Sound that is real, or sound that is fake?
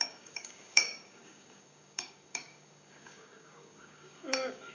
fake